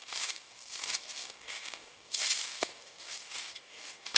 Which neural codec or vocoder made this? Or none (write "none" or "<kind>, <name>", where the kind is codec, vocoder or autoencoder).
codec, DAC